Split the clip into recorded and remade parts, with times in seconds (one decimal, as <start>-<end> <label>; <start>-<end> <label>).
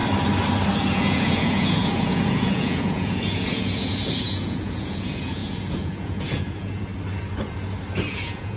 0.0-0.9 recorded; 0.9-6.9 remade; 6.9-8.1 recorded; 8.1-8.6 remade